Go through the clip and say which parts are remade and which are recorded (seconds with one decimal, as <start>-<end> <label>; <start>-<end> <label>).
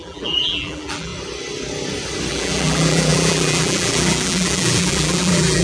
0.0-1.1 remade; 1.1-2.3 recorded; 2.3-5.6 remade